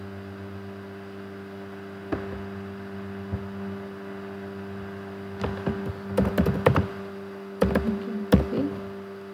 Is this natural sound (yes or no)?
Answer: yes